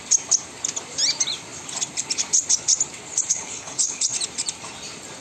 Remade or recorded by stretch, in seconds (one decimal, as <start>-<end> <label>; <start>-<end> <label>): 0.0-3.3 recorded; 3.3-4.1 remade; 4.1-5.2 recorded